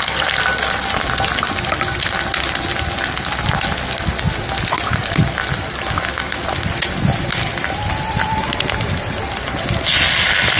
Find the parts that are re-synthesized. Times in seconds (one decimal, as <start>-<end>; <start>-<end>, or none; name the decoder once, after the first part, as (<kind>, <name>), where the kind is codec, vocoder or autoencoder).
none